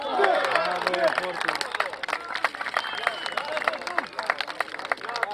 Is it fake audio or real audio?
real